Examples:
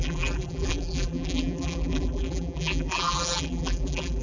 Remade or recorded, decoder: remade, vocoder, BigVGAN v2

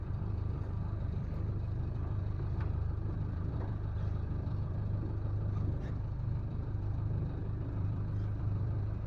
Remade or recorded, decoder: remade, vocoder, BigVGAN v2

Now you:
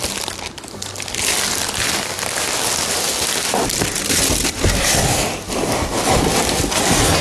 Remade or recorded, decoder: recorded